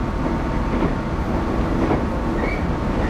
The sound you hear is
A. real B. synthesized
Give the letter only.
A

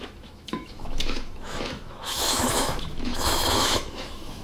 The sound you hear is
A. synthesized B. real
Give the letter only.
A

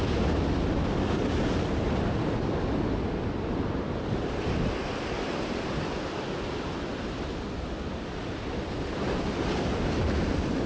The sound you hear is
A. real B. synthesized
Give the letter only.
A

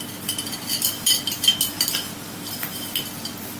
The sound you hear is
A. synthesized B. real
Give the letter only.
B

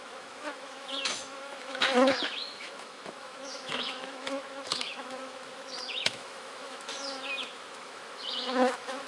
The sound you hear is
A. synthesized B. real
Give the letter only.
A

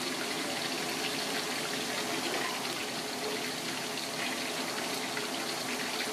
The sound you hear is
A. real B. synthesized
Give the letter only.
A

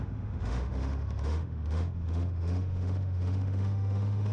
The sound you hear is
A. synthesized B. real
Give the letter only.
A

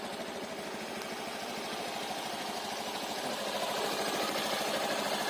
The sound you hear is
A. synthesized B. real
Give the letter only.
B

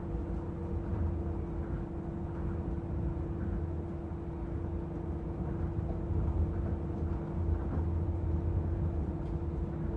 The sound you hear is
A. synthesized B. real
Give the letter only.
B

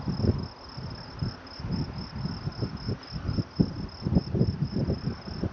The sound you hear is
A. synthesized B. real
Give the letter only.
B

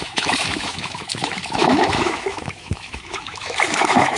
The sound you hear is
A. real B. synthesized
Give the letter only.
B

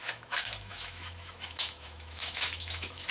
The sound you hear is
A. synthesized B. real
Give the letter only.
A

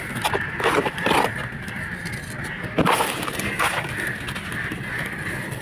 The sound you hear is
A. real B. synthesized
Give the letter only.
A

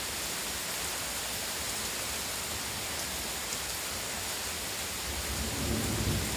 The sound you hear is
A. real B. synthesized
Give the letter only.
A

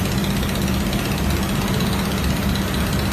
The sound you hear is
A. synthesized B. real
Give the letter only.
B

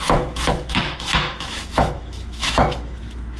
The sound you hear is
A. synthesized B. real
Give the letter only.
A